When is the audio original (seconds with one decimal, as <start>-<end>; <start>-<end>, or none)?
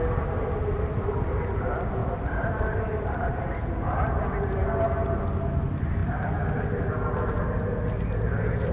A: 0.0-8.7